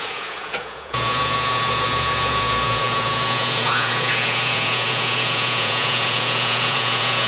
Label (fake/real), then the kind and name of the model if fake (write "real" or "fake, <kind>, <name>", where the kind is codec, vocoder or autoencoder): fake, vocoder, Vocos